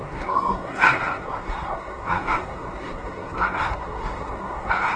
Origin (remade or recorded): remade